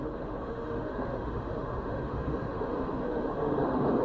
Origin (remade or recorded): remade